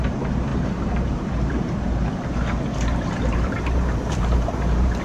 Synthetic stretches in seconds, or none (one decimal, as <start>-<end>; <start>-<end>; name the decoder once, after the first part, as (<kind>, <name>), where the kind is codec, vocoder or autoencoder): 0.0-5.0 (vocoder, BigVGAN v2)